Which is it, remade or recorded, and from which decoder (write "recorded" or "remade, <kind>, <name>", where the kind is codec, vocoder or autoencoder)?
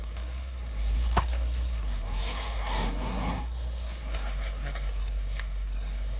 remade, codec, SNAC